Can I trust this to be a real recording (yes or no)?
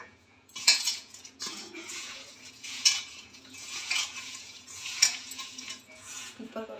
no